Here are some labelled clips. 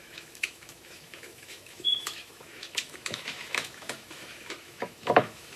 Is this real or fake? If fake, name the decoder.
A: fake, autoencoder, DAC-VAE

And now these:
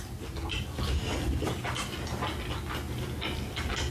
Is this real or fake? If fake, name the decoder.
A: real